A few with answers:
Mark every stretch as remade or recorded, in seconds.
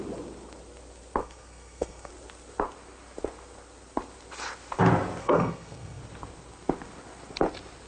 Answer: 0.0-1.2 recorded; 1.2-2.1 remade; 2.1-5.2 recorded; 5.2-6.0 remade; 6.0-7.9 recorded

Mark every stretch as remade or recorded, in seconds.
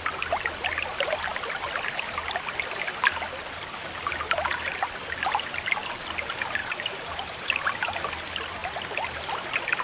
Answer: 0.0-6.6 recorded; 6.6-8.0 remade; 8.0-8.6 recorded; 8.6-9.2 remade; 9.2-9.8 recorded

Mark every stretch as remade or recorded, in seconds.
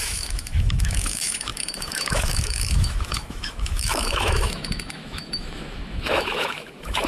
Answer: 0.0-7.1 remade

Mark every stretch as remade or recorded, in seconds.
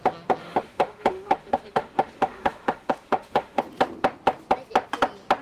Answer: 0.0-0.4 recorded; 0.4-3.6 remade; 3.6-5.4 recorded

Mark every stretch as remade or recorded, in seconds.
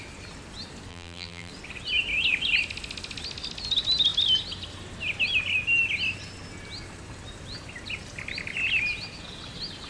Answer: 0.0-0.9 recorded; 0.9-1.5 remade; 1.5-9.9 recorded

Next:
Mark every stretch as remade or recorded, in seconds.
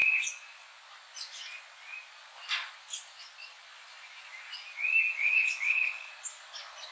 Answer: 0.0-5.2 recorded; 5.2-6.1 remade; 6.1-6.9 recorded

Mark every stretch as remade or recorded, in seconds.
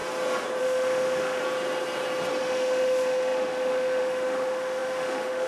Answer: 0.0-0.6 recorded; 0.6-1.4 remade; 1.4-2.4 recorded; 2.4-5.5 remade